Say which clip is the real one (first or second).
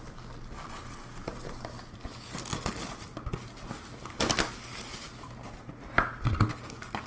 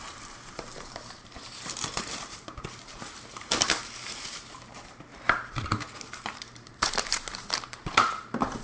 first